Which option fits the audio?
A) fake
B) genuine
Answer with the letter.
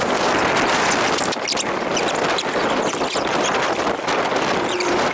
B